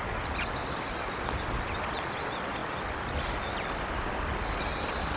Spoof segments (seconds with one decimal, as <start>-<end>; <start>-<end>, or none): none